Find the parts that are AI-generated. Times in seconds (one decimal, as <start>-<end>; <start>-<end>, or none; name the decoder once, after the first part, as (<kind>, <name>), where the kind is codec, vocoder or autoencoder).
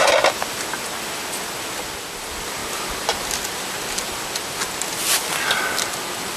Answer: none